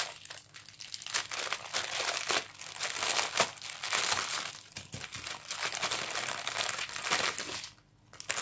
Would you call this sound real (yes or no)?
yes